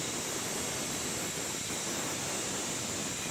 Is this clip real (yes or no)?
yes